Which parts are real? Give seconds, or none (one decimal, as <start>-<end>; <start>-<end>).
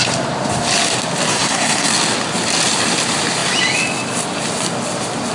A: 0.0-1.3; 1.9-5.3